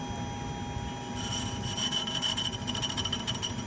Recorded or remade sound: recorded